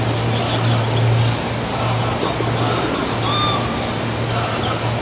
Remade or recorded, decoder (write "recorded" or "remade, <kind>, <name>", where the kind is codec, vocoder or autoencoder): recorded